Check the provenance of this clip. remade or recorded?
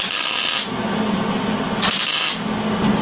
recorded